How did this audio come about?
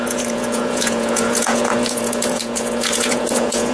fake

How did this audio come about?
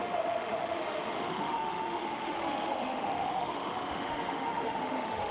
fake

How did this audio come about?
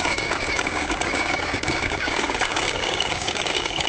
fake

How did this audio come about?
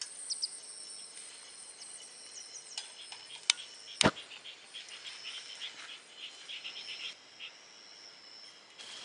real